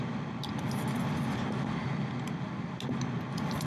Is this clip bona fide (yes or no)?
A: yes